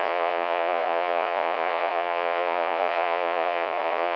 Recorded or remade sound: remade